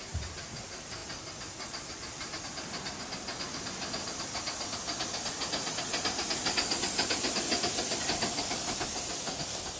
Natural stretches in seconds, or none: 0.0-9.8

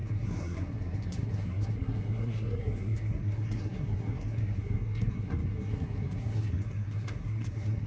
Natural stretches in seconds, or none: none